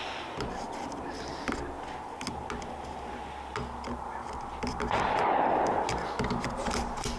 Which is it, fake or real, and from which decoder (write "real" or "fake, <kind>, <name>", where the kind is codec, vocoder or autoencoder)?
real